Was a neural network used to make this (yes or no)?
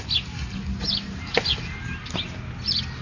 no